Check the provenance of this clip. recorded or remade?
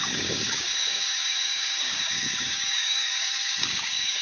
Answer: remade